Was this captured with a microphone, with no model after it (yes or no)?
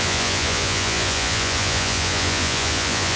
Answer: no